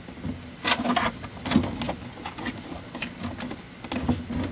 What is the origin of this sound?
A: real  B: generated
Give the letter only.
A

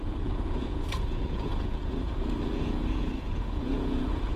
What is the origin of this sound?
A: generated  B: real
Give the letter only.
A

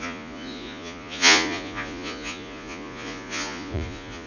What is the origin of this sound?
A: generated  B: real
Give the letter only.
A